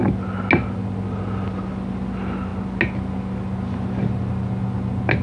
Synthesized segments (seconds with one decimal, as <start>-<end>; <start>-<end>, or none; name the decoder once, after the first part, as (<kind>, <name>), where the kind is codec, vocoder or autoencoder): none